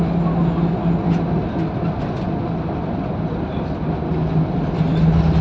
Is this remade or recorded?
recorded